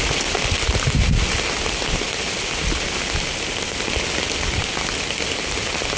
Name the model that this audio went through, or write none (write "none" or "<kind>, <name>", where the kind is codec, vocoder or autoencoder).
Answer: none